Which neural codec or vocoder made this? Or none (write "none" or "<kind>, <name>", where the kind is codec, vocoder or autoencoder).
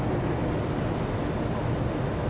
none